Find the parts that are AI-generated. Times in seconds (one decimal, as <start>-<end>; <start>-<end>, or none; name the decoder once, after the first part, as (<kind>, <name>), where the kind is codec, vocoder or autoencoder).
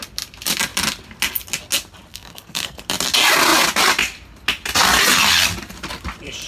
2.1-2.8 (codec, SNAC)